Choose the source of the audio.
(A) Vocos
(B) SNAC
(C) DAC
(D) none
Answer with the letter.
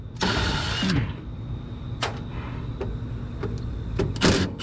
D